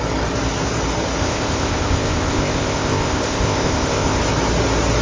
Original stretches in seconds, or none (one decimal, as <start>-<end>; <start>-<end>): 0.0-1.2; 4.2-5.0